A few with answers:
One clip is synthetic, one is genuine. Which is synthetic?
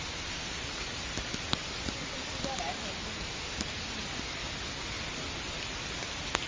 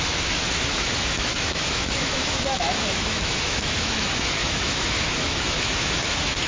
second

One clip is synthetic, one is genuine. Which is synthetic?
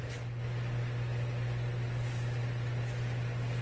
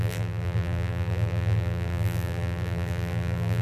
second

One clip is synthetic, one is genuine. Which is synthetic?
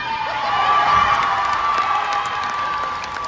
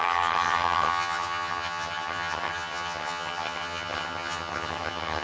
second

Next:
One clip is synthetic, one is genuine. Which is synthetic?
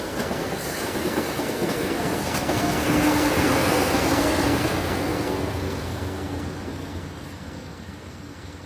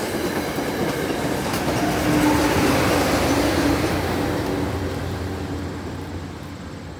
first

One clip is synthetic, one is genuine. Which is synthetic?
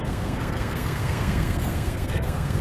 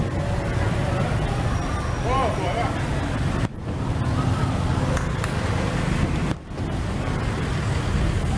first